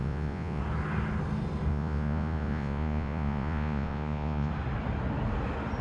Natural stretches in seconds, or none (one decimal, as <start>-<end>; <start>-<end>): 0.6-1.7; 4.5-5.8